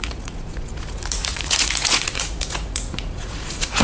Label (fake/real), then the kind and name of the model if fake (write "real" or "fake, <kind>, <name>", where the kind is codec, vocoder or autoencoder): fake, vocoder, Vocos